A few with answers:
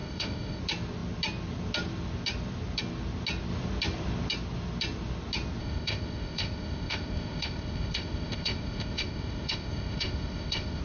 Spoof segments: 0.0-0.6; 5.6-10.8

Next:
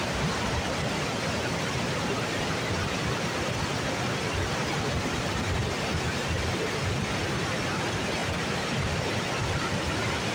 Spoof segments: none